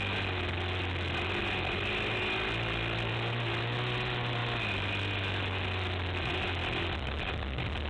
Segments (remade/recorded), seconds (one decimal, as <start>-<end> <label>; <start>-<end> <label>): 0.0-7.9 recorded